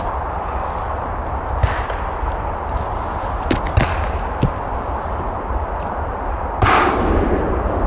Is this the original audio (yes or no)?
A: yes